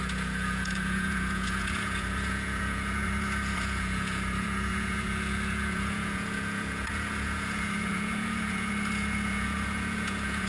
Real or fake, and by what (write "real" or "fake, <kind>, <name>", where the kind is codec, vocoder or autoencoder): fake, vocoder, Vocos